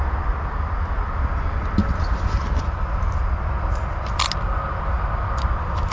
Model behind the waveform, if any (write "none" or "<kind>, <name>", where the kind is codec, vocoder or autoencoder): none